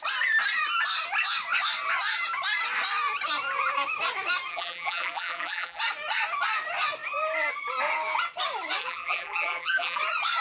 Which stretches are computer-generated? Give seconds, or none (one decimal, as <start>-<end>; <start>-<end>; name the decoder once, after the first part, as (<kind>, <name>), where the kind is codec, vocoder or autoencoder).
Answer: 4.5-5.8 (vocoder, BigVGAN v2); 8.8-10.0